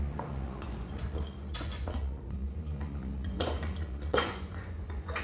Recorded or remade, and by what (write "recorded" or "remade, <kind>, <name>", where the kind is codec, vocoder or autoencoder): remade, vocoder, Vocos